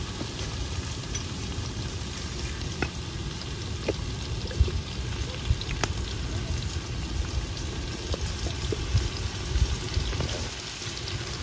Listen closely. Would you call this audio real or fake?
real